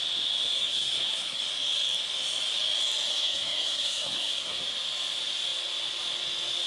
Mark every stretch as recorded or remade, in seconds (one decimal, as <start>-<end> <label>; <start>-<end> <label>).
0.0-0.6 recorded; 0.6-1.4 remade; 1.4-3.1 recorded; 3.1-4.6 remade; 4.6-6.7 recorded